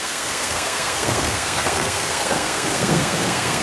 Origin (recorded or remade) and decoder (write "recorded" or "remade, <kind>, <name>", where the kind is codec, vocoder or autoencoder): remade, codec, SNAC